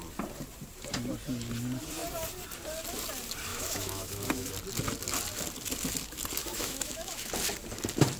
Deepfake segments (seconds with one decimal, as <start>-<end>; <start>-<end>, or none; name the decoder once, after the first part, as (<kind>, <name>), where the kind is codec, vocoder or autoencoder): 3.5-4.5 (autoencoder, DAC-VAE); 6.4-7.3